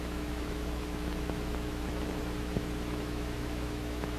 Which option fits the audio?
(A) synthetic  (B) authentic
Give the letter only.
A